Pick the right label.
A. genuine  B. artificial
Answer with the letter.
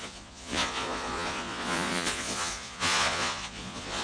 B